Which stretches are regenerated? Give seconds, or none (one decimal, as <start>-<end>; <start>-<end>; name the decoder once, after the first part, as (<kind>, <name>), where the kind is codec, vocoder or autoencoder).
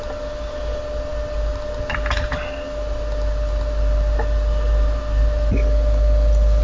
none